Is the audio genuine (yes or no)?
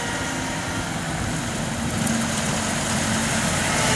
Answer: yes